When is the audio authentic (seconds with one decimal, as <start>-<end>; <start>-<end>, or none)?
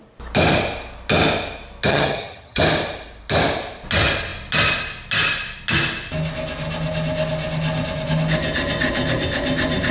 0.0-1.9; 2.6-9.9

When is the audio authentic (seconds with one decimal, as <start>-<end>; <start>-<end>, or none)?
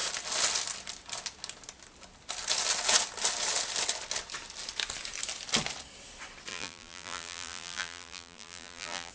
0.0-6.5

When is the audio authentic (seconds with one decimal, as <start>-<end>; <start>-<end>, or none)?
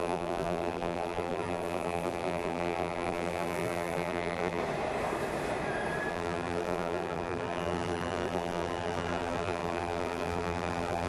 4.6-6.1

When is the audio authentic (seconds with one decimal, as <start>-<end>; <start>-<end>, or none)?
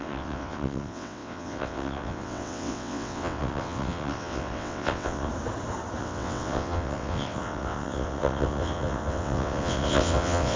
5.3-6.0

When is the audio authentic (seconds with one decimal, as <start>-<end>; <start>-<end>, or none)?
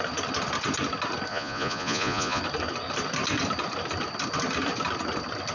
0.0-1.3; 2.4-5.5